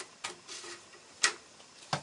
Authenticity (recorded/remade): recorded